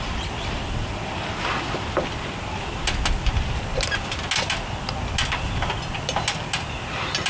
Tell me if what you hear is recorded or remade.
recorded